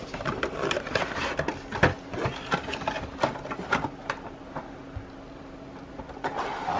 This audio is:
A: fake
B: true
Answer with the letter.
B